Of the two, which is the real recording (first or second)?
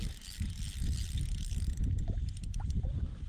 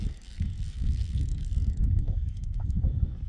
first